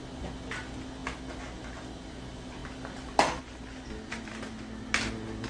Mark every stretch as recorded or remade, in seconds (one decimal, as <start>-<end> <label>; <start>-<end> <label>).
0.0-5.5 recorded